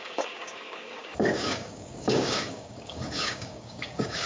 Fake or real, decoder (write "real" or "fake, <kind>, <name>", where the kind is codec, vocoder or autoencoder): fake, codec, DAC